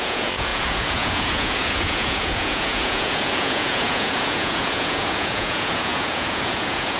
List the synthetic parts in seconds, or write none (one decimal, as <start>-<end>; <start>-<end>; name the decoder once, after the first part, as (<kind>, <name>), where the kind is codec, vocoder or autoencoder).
0.0-7.0 (vocoder, Vocos)